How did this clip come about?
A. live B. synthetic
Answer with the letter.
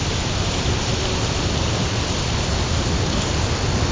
A